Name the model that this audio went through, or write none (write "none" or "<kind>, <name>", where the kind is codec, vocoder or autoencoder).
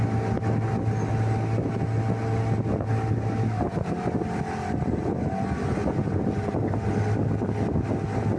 none